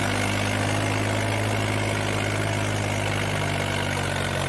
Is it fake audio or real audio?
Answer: real